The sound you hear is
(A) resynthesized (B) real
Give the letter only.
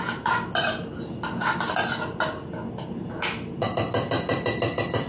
B